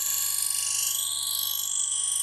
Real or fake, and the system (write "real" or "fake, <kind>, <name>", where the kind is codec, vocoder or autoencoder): real